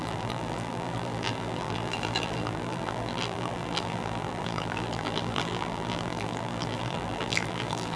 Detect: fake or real fake